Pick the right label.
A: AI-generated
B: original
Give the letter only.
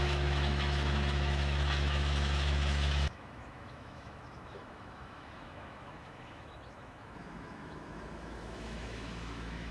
A